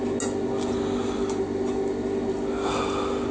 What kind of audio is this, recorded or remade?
recorded